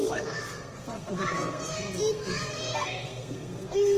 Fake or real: fake